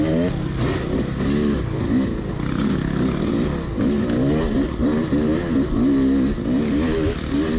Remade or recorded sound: recorded